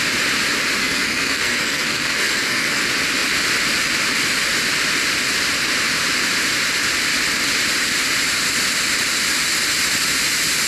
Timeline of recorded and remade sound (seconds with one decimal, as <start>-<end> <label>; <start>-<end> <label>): 0.0-0.8 recorded; 0.8-2.8 remade; 2.8-10.7 recorded